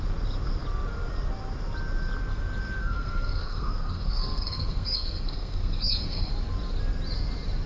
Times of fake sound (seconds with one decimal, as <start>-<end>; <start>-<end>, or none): 2.8-6.3